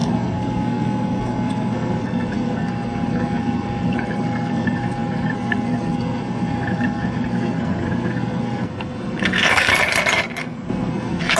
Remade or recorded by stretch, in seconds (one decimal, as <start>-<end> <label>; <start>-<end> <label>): 0.0-9.7 remade; 9.7-10.4 recorded; 10.4-11.4 remade